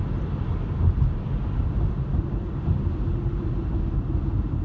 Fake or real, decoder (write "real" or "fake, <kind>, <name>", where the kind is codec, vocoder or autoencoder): real